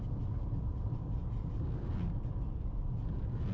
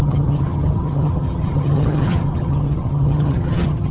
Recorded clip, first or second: first